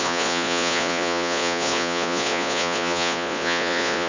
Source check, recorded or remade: remade